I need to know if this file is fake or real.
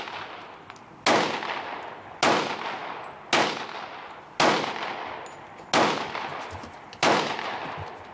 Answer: real